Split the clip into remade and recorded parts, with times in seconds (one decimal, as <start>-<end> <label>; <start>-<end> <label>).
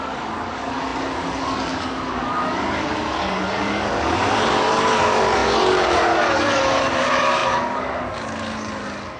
0.0-9.2 remade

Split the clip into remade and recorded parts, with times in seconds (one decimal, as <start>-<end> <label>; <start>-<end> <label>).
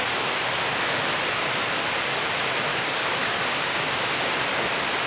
0.0-2.7 recorded; 2.7-3.7 remade; 3.7-5.1 recorded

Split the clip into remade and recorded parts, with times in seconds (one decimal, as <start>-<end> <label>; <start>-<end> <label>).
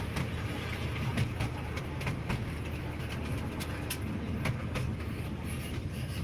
0.0-6.2 recorded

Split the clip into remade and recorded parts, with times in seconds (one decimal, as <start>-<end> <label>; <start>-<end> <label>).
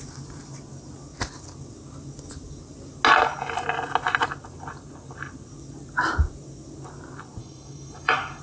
0.0-7.4 recorded; 7.4-8.4 remade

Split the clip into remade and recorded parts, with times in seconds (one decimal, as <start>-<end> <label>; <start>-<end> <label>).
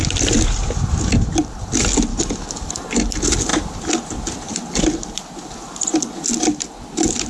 0.0-2.1 recorded; 2.1-2.7 remade; 2.7-7.3 recorded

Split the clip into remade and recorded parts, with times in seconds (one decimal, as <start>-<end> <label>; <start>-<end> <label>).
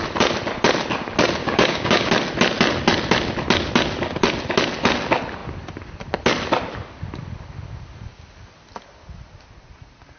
0.0-1.4 recorded; 1.4-2.1 remade; 2.1-10.2 recorded